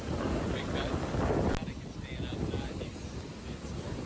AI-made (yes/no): no